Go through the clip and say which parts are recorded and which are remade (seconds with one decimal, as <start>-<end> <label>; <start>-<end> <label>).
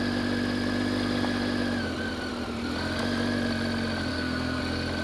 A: 0.0-4.1 recorded; 4.1-4.6 remade; 4.6-5.0 recorded